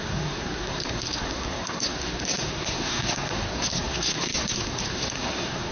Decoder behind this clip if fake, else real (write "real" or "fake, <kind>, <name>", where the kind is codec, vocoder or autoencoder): fake, codec, SNAC